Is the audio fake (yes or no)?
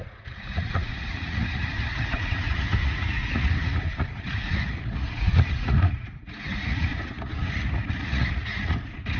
yes